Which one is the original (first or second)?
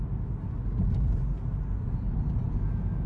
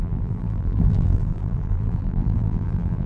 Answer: first